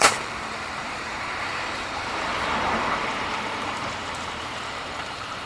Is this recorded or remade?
remade